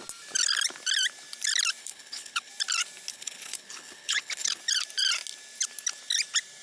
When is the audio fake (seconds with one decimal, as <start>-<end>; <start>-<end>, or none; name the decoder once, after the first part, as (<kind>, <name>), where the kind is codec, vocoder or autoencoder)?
1.8-2.5 (codec, HILCodec); 3.1-4.6